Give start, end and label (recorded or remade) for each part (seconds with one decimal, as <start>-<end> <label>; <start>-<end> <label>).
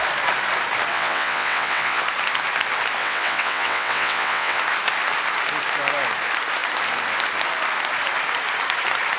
0.0-0.9 recorded; 0.9-2.0 remade; 2.0-3.0 recorded; 3.0-4.6 remade; 4.6-9.2 recorded